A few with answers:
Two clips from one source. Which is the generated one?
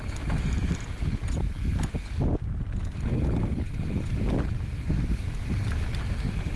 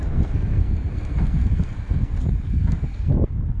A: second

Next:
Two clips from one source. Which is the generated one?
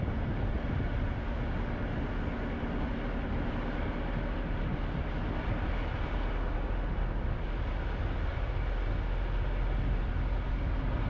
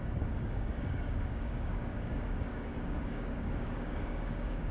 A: second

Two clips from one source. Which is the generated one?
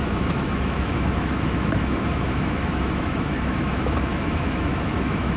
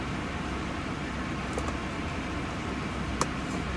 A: first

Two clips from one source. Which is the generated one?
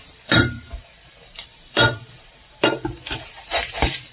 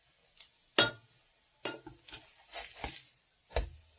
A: first